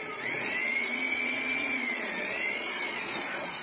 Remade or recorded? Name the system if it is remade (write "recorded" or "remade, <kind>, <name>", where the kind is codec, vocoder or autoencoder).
remade, vocoder, Vocos